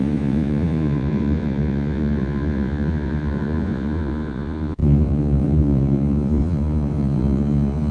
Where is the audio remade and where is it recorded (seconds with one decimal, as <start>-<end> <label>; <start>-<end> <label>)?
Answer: 0.0-7.9 remade